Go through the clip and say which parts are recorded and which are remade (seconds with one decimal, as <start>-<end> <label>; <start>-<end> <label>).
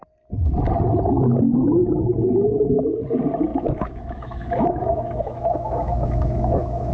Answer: 0.0-3.5 recorded; 3.5-6.9 remade